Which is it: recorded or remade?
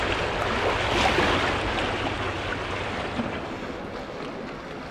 recorded